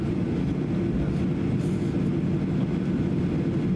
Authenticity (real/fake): real